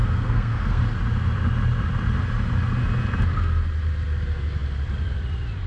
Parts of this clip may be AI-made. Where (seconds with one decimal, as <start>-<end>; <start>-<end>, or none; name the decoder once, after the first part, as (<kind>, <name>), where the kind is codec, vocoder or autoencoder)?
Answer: 0.0-0.8 (codec, SNAC)